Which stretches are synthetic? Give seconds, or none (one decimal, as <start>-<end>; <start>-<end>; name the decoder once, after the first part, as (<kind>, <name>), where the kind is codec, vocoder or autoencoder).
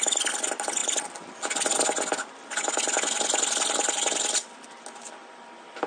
none